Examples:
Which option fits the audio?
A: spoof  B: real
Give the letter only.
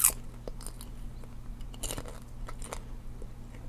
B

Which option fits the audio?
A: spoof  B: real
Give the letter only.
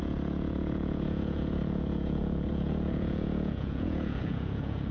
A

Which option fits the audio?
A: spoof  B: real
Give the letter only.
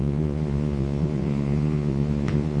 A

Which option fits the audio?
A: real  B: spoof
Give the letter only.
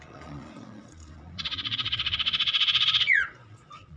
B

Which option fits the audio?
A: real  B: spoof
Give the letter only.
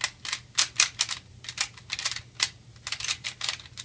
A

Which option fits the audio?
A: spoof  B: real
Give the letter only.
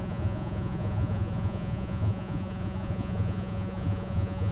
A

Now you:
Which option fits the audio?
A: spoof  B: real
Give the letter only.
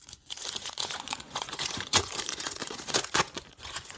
A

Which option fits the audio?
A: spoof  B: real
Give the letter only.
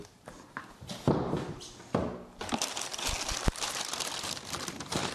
B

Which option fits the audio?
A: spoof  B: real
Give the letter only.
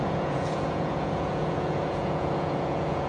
A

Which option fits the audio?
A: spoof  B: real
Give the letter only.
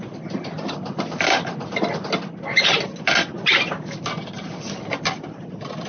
B